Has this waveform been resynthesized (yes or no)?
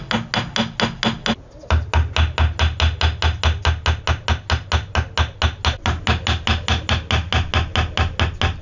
no